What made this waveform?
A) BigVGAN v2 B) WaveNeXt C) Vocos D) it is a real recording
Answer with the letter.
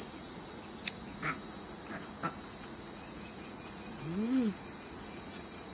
C